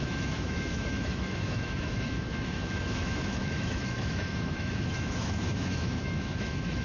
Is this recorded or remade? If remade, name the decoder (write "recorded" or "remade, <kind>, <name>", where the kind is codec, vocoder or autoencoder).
remade, autoencoder, DAC-VAE